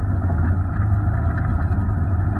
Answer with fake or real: real